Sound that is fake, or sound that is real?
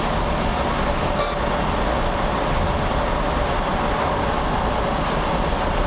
real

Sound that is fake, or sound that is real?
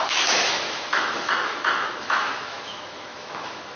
fake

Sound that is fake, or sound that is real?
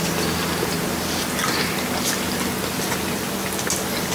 real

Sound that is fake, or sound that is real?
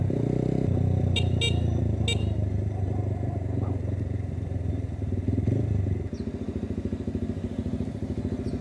real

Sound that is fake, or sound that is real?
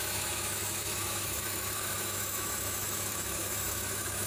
fake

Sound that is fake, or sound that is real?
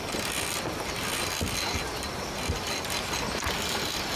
real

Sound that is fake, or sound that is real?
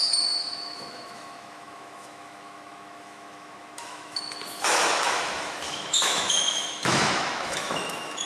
fake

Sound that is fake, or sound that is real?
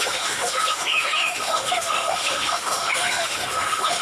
fake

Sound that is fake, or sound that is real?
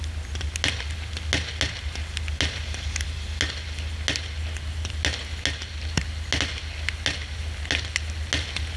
real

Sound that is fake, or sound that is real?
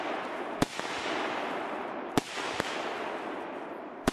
real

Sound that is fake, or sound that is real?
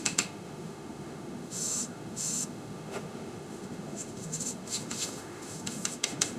fake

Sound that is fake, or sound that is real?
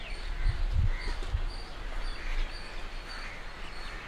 real